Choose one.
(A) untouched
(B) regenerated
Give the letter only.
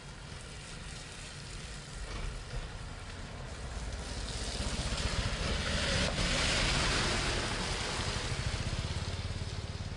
A